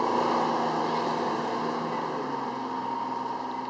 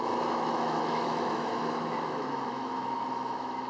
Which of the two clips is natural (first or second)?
first